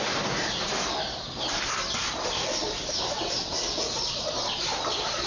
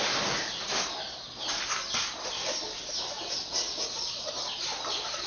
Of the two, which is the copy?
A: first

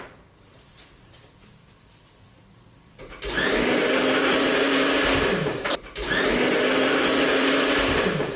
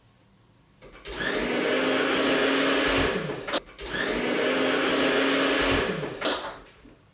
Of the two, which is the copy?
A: first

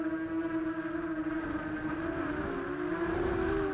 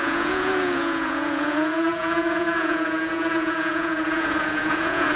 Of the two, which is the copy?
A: second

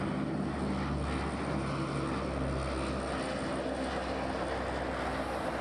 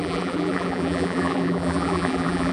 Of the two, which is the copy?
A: second